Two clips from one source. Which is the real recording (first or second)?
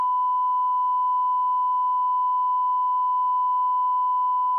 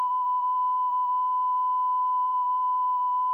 first